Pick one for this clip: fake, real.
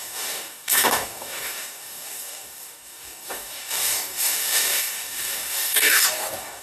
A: fake